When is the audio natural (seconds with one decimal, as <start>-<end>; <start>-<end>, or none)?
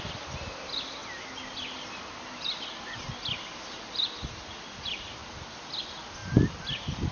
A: 0.0-7.1